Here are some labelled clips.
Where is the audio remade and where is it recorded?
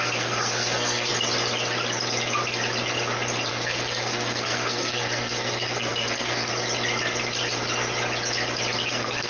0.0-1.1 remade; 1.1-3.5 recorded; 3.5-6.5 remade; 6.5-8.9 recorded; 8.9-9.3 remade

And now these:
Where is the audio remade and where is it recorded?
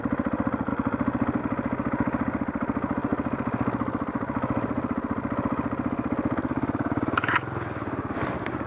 0.0-8.7 recorded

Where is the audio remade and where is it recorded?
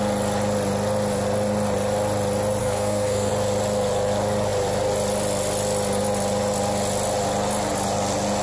0.0-2.6 recorded; 2.6-3.3 remade; 3.3-8.4 recorded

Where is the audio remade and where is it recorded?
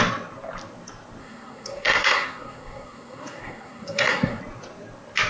0.0-1.2 recorded; 1.2-4.4 remade; 4.4-5.3 recorded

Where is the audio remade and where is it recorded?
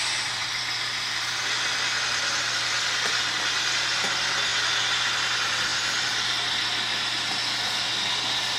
0.0-8.6 recorded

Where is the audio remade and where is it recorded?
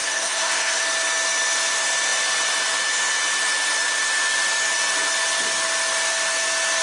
0.0-0.8 remade; 0.8-6.8 recorded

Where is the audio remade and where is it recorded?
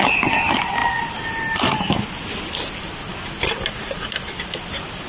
0.0-5.1 recorded